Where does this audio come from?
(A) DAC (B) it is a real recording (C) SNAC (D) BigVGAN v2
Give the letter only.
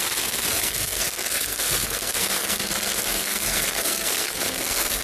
C